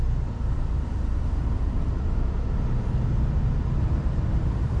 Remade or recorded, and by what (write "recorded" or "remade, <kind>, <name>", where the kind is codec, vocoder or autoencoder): remade, vocoder, BigVGAN v2